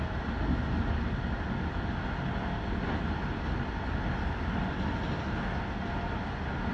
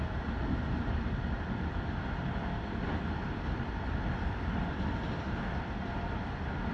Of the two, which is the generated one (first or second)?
second